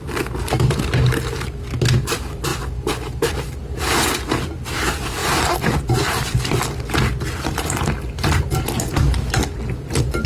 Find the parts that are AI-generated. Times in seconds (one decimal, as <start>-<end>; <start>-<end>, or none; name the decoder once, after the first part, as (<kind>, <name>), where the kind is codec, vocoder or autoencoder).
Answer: none